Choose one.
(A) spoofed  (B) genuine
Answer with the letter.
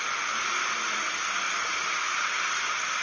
B